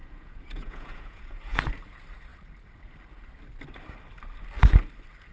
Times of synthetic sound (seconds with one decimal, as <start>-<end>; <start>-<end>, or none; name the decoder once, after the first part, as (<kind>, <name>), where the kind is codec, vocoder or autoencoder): 0.0-1.6 (vocoder, Vocos)